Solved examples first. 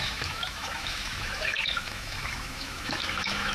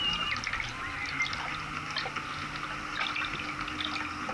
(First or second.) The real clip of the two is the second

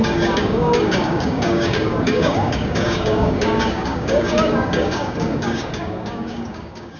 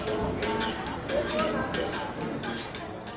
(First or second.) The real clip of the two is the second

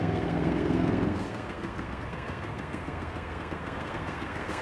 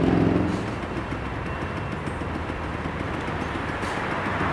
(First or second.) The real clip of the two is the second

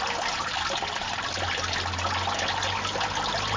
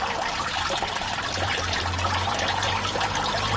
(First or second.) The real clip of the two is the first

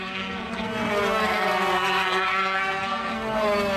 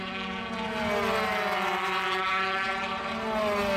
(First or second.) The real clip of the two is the second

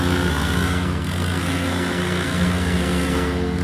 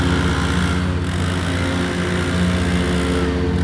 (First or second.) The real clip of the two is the second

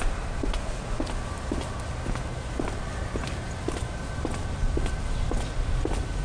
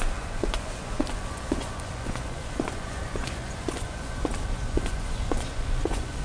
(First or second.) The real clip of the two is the first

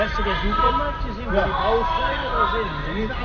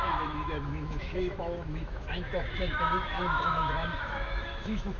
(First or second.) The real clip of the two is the first